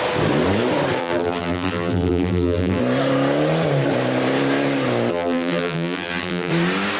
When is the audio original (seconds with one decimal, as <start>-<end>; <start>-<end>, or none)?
0.0-1.0; 2.8-5.1; 6.5-7.0